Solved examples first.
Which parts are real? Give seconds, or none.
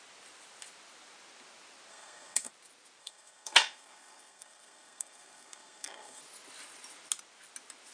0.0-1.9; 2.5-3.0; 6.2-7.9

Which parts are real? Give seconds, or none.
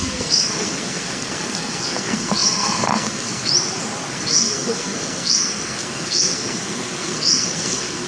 3.5-4.1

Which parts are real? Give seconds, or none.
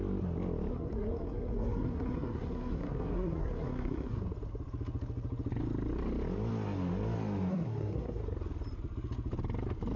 0.0-0.7; 4.2-7.5; 8.2-10.0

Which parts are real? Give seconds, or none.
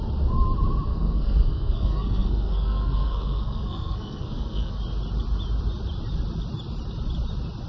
0.0-0.9; 4.7-7.7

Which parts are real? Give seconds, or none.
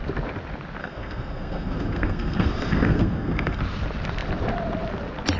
0.0-0.8; 3.6-5.4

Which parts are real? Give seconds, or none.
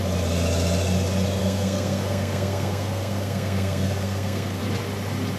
0.0-1.4; 4.6-5.4